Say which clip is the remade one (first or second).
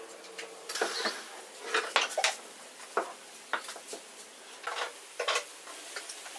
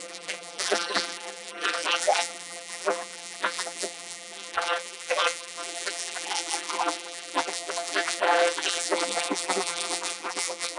second